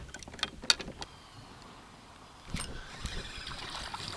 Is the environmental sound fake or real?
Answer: real